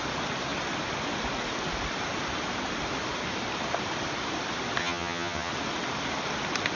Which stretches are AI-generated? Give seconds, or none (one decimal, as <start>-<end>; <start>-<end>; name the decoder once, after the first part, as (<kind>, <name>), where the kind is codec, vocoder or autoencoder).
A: 4.8-5.5 (vocoder, HiFi-GAN)